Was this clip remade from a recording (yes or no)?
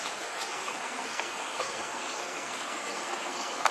yes